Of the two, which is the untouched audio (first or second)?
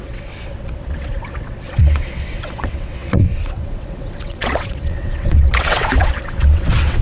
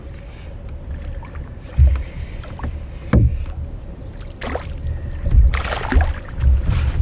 second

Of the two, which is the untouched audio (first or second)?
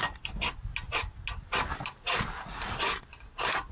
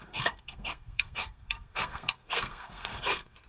first